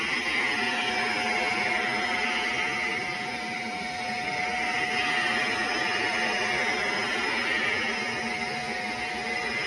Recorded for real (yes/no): yes